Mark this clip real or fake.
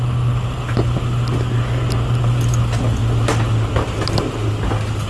real